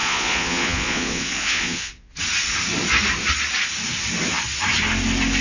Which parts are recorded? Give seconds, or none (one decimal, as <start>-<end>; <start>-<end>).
2.2-5.4

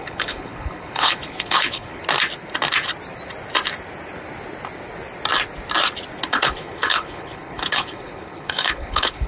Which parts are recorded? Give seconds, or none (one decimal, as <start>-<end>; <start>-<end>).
2.0-6.3

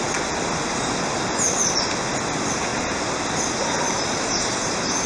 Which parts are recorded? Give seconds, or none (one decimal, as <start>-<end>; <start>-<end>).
0.0-5.1

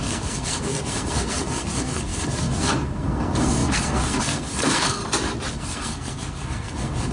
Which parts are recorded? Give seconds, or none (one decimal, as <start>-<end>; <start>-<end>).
5.0-5.5

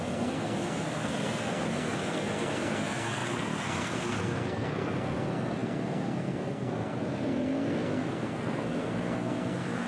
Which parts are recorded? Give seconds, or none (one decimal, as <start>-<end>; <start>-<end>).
none